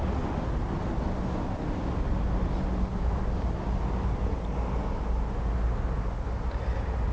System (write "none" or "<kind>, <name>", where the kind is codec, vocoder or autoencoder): none